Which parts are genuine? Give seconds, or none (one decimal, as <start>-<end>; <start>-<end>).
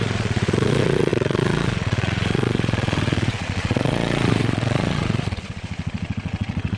none